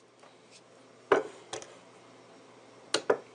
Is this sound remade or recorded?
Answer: recorded